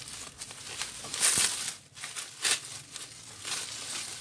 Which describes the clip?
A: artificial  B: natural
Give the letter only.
B